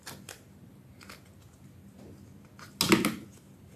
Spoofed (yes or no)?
no